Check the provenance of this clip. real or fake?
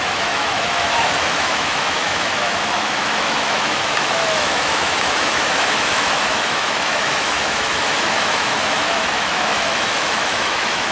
fake